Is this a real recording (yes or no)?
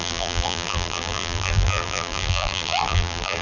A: no